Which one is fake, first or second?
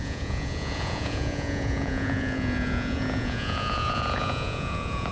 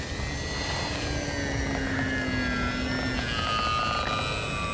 first